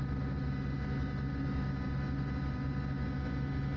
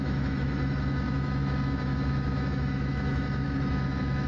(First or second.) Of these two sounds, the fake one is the second